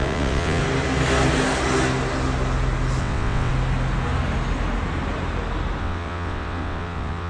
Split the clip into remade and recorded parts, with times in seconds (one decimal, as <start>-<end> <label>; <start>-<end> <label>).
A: 0.0-0.6 remade; 0.6-3.0 recorded; 3.0-3.5 remade; 3.5-5.8 recorded; 5.8-7.3 remade